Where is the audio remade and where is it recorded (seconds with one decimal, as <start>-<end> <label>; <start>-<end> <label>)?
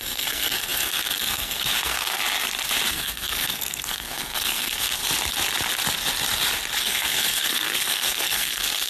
0.0-2.2 remade; 2.2-2.9 recorded; 2.9-5.0 remade; 5.0-6.8 recorded; 6.8-8.9 remade